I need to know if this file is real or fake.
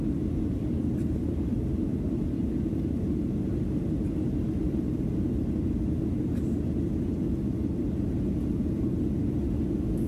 real